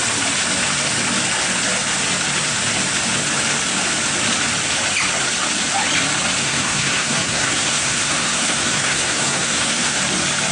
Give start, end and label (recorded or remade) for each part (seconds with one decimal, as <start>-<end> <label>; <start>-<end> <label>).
0.0-6.4 recorded; 6.4-10.0 remade; 10.0-10.5 recorded